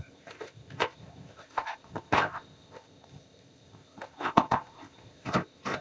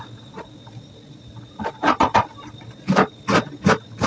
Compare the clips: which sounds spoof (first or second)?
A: first